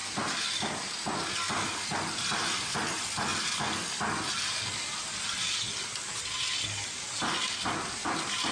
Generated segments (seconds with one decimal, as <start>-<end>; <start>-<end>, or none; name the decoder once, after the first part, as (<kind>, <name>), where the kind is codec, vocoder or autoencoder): none